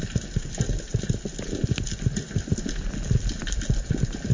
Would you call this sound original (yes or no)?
yes